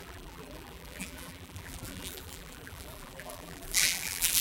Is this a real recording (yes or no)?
no